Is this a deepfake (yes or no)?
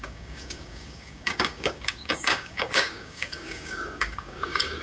yes